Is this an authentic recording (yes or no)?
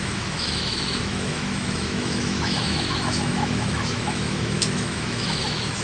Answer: no